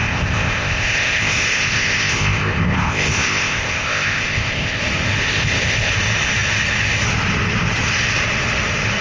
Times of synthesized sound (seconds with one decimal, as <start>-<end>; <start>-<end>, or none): 0.0-4.8; 5.2-5.9